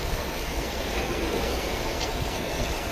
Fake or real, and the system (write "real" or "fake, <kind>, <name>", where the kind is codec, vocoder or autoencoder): fake, codec, SNAC